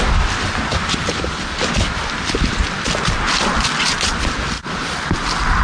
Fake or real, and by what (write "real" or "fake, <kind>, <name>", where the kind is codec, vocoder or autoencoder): real